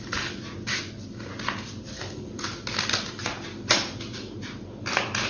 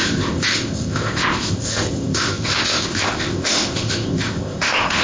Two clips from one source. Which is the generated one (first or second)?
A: second